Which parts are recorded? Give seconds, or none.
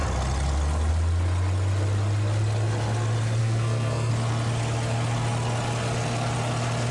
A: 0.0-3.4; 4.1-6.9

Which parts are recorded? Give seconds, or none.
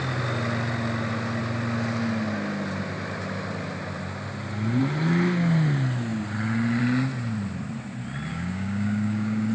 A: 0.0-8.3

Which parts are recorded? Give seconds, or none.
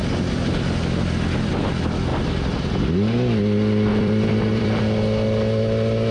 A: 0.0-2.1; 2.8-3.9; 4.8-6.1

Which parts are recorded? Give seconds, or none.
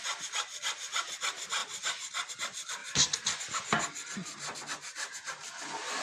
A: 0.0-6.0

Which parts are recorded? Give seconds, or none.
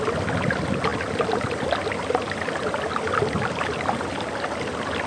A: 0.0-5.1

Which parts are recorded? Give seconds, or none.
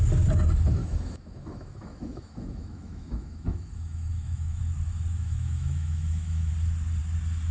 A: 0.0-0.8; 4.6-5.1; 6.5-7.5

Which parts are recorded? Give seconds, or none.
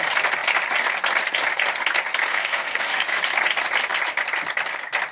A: 0.0-2.3; 3.2-5.1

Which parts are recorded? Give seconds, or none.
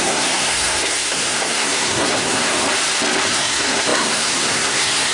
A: 2.5-3.3